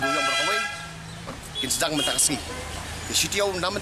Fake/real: real